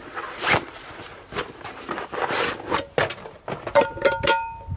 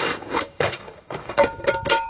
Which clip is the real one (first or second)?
first